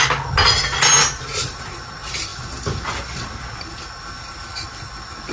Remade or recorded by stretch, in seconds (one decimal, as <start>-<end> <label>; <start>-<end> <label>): 0.0-5.3 recorded